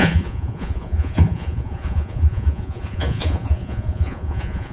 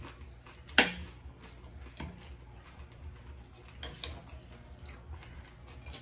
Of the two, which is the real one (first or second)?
second